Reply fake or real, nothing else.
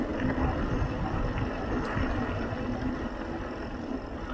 real